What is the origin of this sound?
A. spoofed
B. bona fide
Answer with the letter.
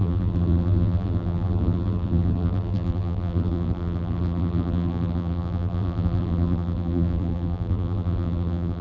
A